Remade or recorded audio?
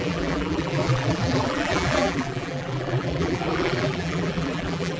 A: remade